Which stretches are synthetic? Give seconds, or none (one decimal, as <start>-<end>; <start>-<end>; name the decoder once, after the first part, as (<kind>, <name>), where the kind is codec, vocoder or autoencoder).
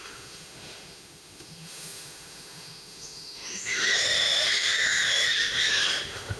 0.0-6.4 (autoencoder, DAC-VAE)